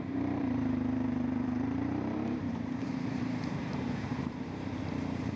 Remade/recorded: remade